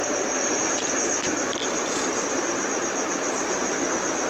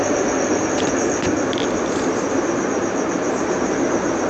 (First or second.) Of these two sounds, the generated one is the first